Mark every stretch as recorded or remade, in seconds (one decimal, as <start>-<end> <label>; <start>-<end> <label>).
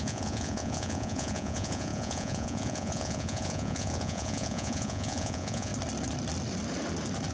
0.0-5.7 remade; 5.7-7.3 recorded